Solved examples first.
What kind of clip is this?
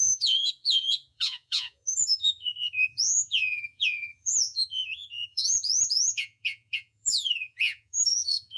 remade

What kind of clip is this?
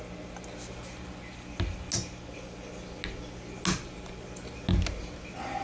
recorded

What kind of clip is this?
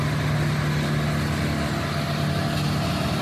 recorded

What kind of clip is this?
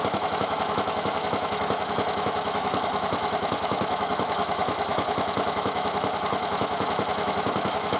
remade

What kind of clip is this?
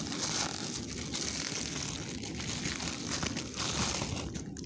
recorded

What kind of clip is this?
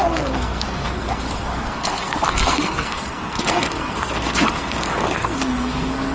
remade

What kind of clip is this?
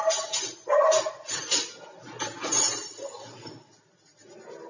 recorded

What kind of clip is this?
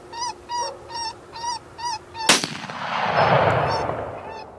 recorded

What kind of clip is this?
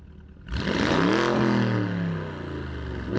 recorded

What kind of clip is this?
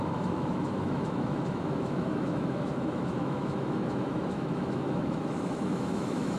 remade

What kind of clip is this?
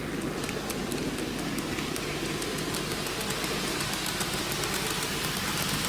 recorded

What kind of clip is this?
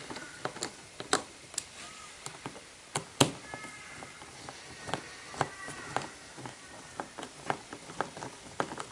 remade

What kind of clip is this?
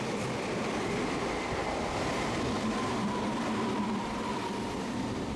remade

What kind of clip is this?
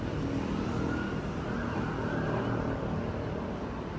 recorded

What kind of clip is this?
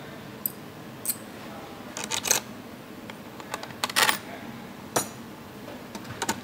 recorded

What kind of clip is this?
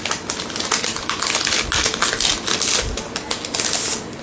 recorded